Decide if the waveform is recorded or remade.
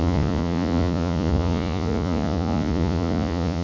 remade